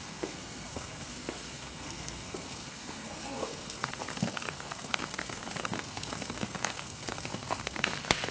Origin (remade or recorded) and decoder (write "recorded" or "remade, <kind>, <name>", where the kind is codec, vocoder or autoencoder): remade, codec, SNAC